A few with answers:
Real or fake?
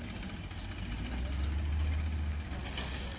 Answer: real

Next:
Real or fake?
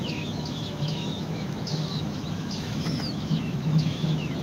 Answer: fake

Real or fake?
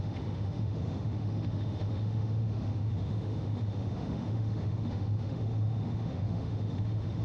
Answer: fake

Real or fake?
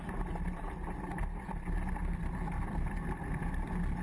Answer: real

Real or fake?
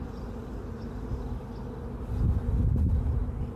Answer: real